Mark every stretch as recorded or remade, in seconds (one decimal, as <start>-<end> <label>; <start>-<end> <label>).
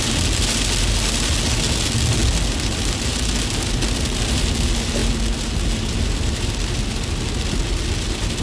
0.0-8.4 recorded